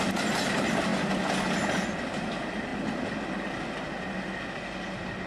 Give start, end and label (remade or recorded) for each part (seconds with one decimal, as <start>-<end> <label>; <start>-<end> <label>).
0.0-0.9 remade; 0.9-2.1 recorded; 2.1-2.7 remade; 2.7-5.3 recorded